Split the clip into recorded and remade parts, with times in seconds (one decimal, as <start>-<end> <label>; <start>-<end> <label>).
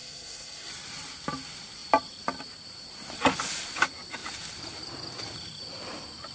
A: 0.0-0.7 remade; 0.7-6.3 recorded